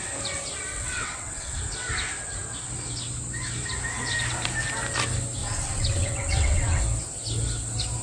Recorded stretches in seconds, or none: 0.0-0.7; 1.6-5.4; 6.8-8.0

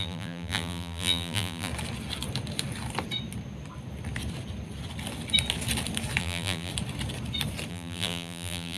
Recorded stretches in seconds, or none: 1.7-6.2; 6.7-7.7

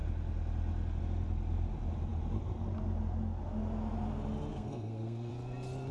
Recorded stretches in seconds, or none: 0.0-4.5; 5.3-5.9